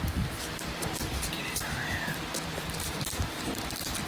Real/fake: fake